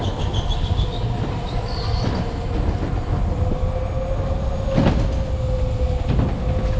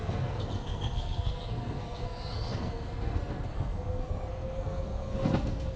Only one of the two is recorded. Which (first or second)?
first